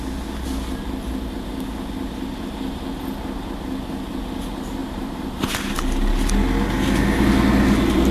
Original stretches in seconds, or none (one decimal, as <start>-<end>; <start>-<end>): 0.0-4.8; 5.5-8.1